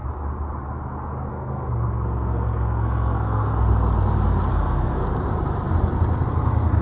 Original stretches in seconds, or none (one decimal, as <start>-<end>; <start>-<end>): 0.0-1.3; 3.5-4.5; 5.0-6.3